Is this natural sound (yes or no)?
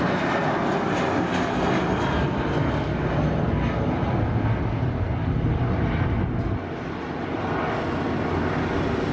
yes